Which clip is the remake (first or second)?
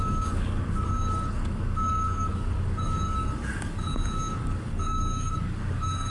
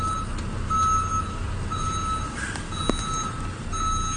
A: first